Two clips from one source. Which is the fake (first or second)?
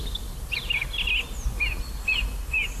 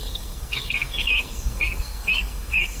second